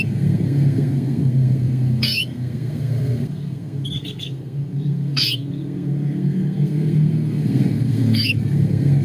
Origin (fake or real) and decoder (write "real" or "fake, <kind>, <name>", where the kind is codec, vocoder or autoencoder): fake, codec, SNAC